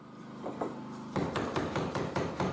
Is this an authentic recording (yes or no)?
yes